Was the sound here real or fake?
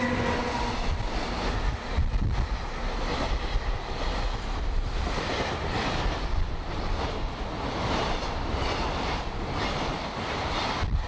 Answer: real